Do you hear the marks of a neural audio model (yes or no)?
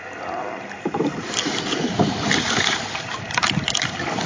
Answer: yes